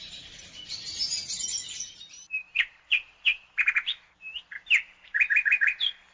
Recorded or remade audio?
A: remade